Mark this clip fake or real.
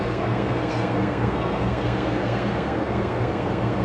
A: fake